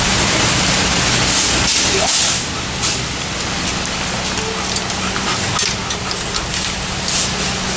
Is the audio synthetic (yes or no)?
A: no